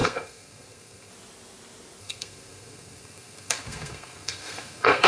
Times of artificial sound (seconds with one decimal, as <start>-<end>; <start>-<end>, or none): 0.0-1.1; 2.0-5.1